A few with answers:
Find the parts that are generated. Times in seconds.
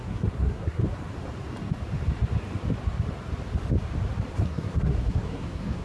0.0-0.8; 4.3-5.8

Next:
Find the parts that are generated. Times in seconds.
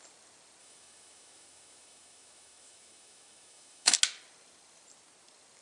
0.6-4.0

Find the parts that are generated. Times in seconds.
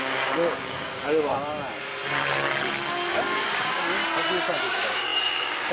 0.0-1.3; 3.1-4.0; 4.6-5.7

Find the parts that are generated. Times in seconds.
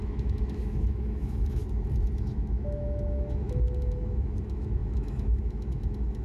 0.0-1.6; 2.2-6.2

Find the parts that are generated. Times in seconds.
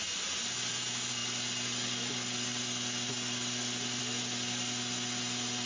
none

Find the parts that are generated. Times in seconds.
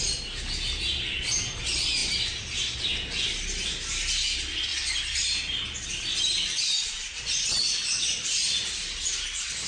none